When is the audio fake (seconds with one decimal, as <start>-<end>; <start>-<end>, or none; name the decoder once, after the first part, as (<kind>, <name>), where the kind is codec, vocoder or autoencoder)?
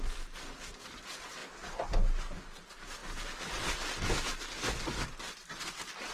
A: none